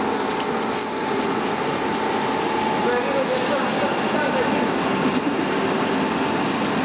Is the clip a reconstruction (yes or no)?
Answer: no